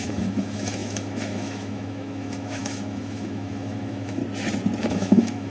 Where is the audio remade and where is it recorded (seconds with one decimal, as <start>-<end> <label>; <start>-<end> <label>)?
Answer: 0.0-4.2 remade; 4.2-4.8 recorded; 4.8-5.5 remade